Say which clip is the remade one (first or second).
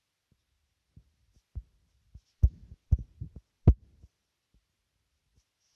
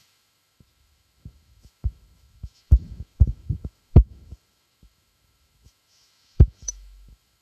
second